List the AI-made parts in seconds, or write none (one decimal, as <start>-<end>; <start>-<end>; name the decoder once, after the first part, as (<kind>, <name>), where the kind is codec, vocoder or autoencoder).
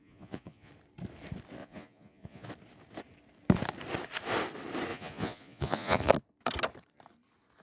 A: 0.0-0.7 (vocoder, Vocos); 1.6-2.5; 4.9-6.1